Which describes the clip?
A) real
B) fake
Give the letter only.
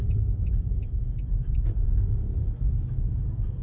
B